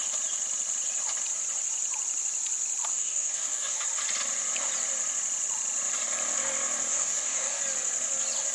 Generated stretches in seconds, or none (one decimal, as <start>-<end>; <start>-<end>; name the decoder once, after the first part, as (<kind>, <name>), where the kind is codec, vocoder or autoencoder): 2.9-3.8 (codec, DAC); 6.9-7.6